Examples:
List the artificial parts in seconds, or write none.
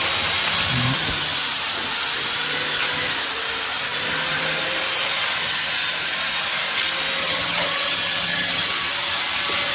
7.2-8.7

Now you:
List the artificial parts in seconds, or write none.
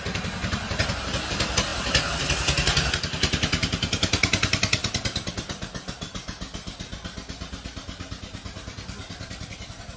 none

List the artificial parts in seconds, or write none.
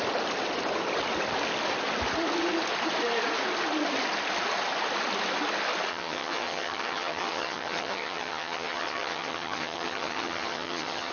5.9-11.1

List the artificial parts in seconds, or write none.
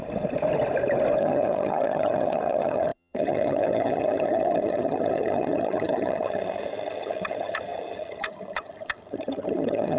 1.2-10.0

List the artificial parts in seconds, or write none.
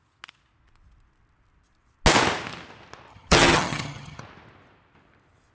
3.1-4.2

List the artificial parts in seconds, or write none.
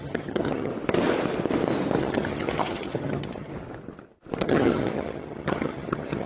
0.0-0.7; 2.0-3.5; 4.4-6.3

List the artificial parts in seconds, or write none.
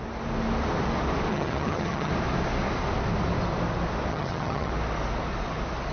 1.3-2.1; 4.1-4.7